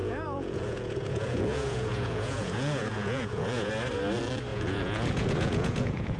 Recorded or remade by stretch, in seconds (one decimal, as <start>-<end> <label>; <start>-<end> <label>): 0.0-3.7 remade; 3.7-4.5 recorded; 4.5-6.2 remade